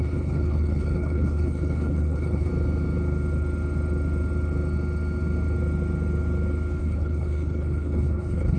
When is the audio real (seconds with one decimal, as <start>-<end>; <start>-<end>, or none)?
2.5-6.8